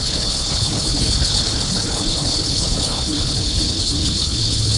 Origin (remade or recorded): remade